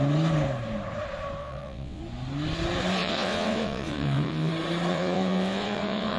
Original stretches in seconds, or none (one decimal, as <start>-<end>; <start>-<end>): 0.0-1.4; 2.0-3.0; 4.5-4.9